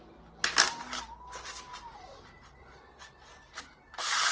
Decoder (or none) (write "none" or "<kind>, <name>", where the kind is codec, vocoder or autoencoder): none